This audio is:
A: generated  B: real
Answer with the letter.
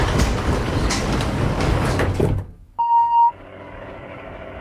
A